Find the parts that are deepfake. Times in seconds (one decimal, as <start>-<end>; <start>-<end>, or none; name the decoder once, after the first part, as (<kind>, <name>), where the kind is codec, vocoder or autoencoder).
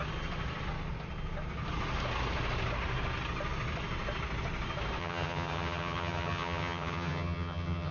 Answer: 5.0-7.9 (vocoder, HiFi-GAN)